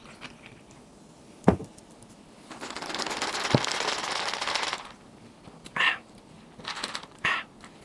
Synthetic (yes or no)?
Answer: no